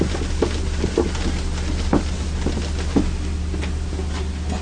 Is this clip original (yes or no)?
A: yes